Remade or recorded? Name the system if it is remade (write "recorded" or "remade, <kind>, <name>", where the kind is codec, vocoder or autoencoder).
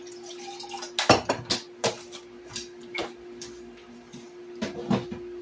recorded